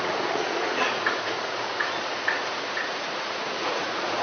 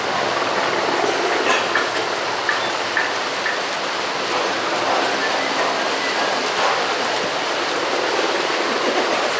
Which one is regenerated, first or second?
first